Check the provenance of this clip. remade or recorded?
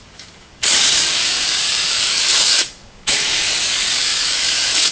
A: remade